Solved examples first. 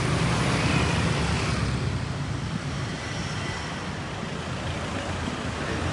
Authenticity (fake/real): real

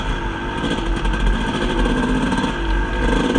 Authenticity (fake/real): real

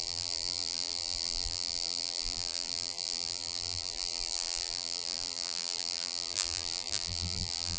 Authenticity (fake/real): fake